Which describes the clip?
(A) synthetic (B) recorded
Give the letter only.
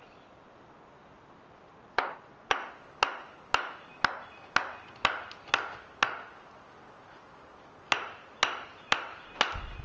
B